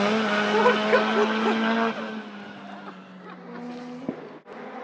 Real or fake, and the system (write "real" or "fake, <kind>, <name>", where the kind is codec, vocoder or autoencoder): real